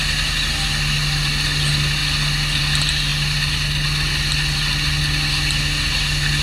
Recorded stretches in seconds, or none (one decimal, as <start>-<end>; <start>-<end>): 0.0-6.4